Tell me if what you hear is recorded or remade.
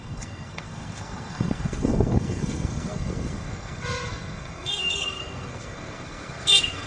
remade